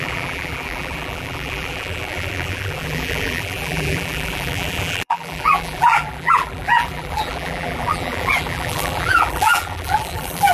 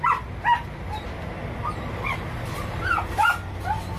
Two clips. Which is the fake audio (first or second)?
first